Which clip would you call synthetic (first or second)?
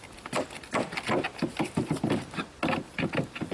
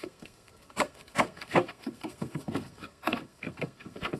second